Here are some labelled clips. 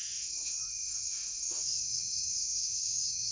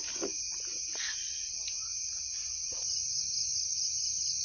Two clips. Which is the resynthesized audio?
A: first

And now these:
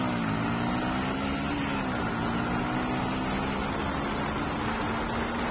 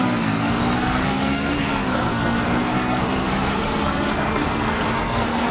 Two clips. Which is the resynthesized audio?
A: second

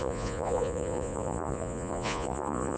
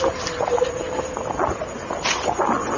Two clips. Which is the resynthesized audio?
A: first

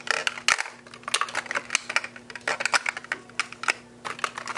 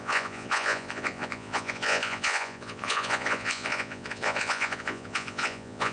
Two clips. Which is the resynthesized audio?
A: second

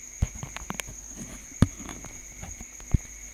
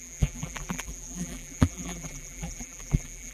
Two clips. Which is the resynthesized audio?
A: second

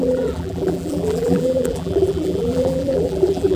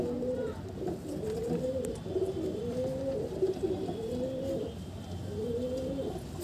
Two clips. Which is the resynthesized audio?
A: first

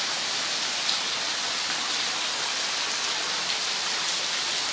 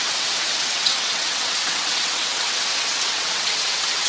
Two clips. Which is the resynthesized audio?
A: second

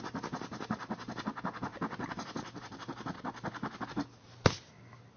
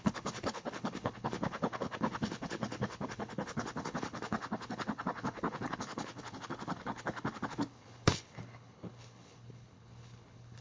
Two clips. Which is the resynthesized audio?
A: second